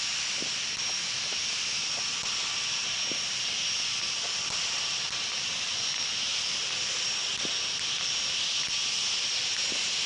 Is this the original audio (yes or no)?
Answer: yes